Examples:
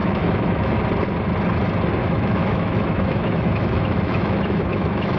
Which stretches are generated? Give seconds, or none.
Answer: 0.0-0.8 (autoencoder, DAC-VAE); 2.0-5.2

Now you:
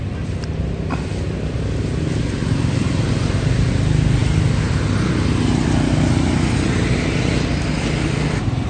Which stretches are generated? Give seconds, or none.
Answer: none

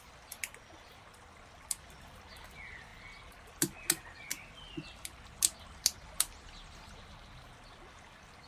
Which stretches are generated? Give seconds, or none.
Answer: none

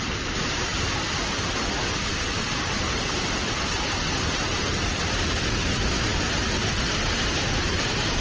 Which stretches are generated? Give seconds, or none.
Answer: none

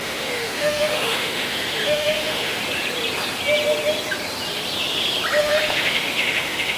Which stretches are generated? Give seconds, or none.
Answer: 0.0-2.6 (autoencoder, DAC-VAE); 5.4-6.8

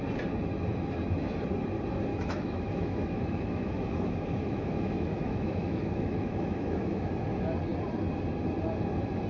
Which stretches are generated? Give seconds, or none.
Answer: 2.1-7.1 (autoencoder, DAC-VAE)

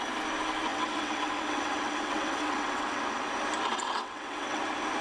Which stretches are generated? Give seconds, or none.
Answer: 0.7-3.0 (vocoder, WaveNeXt); 3.7-4.6

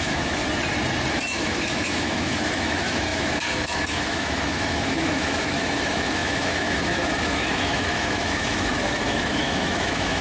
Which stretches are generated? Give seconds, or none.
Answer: 0.0-0.4 (autoencoder, DAC-VAE); 1.1-10.2